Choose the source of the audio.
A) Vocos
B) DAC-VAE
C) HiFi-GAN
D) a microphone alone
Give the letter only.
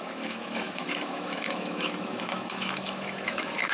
B